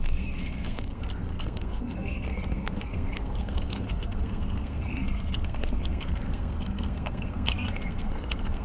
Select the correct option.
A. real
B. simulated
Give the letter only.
B